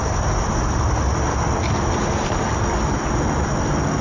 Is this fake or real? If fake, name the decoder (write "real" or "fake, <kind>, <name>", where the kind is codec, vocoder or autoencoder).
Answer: real